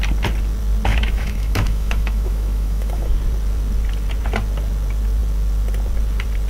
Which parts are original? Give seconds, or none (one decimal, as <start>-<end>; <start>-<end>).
0.0-0.9; 3.1-6.5